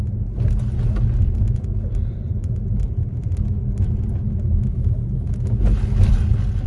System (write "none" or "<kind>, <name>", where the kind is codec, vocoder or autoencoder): none